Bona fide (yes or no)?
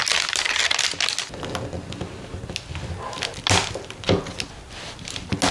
yes